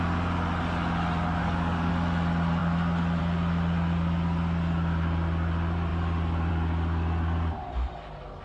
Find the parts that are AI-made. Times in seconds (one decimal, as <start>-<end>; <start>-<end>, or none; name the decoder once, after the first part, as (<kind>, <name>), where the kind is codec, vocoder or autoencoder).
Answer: 1.4-1.9 (codec, DAC)

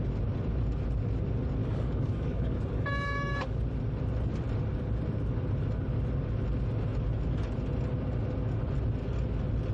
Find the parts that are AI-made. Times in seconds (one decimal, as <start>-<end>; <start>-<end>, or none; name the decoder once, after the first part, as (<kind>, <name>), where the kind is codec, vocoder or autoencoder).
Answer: 1.6-3.6 (codec, DAC)

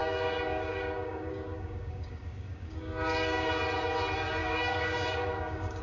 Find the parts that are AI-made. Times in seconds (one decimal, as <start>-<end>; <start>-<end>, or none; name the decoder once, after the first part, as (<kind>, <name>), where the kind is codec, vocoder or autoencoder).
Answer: 0.0-3.5 (codec, DAC); 4.4-5.8

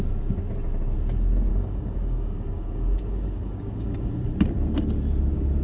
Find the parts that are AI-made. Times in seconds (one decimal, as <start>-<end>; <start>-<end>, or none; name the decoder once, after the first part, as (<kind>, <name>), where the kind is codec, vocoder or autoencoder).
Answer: 1.5-4.3 (codec, DAC)

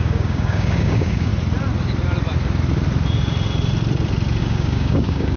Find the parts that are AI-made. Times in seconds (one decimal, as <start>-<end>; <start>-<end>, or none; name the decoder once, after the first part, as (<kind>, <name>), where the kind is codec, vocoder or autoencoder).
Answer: 0.0-1.3 (codec, DAC); 4.4-5.4

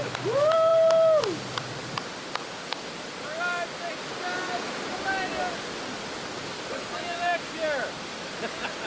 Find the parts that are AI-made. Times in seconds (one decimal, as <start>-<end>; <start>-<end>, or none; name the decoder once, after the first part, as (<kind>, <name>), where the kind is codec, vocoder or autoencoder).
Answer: none